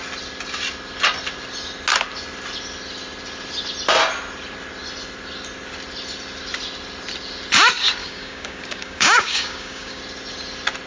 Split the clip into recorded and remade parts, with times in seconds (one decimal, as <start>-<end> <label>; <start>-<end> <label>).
0.0-8.0 recorded; 8.0-10.0 remade; 10.0-10.9 recorded